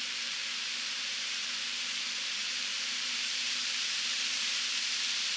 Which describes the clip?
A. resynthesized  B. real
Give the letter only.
A